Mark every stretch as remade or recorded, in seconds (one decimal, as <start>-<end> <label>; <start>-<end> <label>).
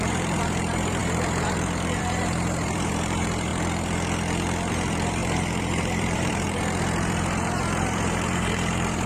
0.0-3.5 remade; 3.5-4.7 recorded; 4.7-9.1 remade